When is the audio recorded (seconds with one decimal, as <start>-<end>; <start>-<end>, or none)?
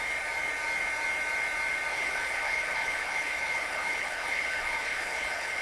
0.0-1.9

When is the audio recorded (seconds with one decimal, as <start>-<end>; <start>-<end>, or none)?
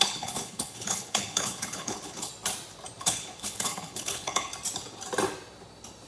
2.3-3.0; 4.5-6.1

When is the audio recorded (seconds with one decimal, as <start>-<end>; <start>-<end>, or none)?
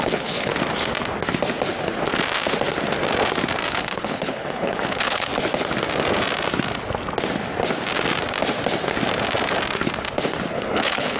0.5-3.7; 5.3-10.5